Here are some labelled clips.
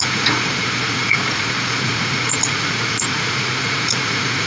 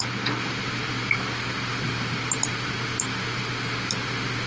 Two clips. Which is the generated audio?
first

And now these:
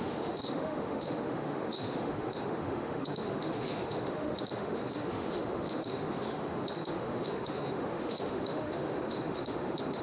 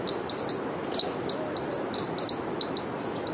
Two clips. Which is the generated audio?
first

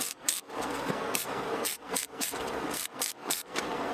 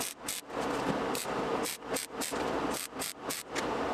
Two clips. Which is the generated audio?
first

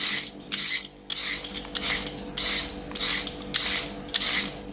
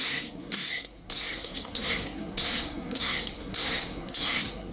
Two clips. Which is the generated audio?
second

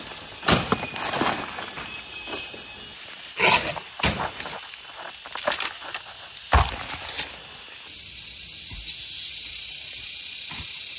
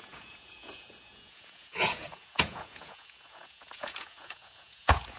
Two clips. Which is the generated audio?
second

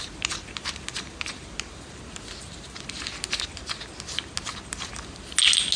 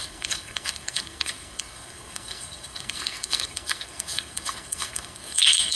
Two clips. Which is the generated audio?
second